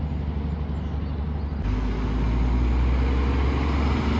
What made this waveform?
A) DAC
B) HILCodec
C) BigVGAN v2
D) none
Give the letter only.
D